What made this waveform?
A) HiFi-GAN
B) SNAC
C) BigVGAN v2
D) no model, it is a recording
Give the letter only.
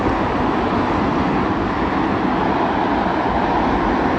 D